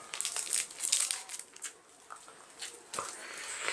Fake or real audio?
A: real